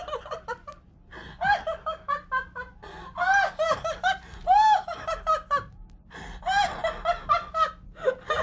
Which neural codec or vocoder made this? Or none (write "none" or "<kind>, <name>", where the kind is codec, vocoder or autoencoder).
none